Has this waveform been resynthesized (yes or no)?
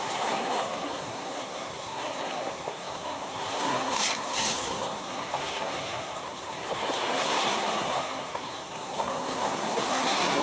yes